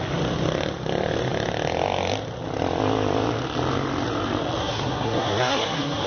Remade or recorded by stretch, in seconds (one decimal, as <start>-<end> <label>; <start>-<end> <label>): 0.0-4.6 recorded; 4.6-6.1 remade